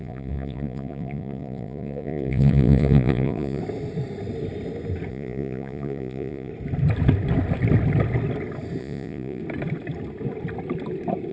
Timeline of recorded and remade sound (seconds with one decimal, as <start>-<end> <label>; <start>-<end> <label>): 0.0-3.6 remade; 3.6-5.1 recorded; 5.1-6.5 remade; 6.5-8.8 recorded; 8.8-9.4 remade; 9.4-11.3 recorded

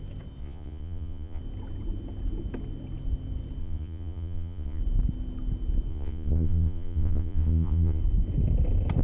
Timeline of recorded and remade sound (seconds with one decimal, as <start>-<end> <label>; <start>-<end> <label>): 0.0-0.4 recorded; 0.4-1.4 remade; 1.4-3.6 recorded; 3.6-4.8 remade; 4.8-5.9 recorded; 5.9-8.0 remade; 8.0-9.0 recorded

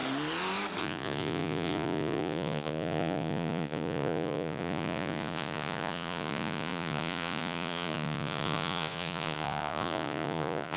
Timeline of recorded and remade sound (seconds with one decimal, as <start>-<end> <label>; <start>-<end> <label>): 0.0-0.8 recorded; 0.8-10.8 remade

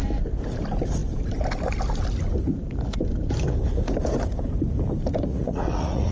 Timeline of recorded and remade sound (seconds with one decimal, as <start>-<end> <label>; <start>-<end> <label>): 0.0-5.3 recorded; 5.3-6.1 remade

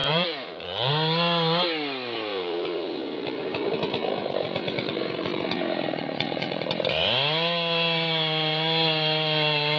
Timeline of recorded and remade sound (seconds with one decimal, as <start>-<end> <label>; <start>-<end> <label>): 0.0-0.9 remade; 0.9-2.3 recorded; 2.3-6.7 remade; 6.7-9.8 recorded

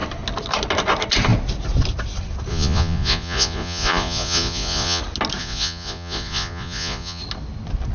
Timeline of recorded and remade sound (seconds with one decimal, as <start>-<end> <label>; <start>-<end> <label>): 0.0-2.5 recorded; 2.5-5.0 remade; 5.0-5.4 recorded; 5.4-7.2 remade; 7.2-7.9 recorded

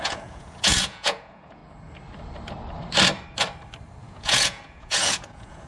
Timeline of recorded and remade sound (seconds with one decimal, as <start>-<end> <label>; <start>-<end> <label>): 0.0-1.6 remade; 1.6-4.0 recorded; 4.0-5.7 remade